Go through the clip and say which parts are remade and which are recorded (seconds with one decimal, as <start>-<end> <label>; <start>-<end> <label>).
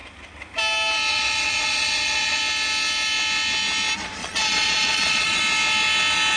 0.0-1.1 recorded; 1.1-2.4 remade; 2.4-4.2 recorded; 4.2-5.4 remade; 5.4-6.4 recorded